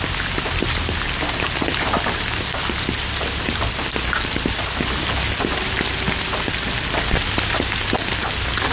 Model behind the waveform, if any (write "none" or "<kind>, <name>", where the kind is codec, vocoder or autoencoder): none